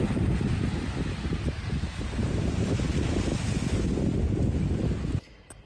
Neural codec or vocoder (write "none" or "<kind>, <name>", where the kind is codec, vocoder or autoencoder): none